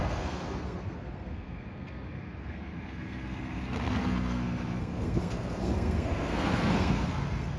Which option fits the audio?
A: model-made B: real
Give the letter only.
A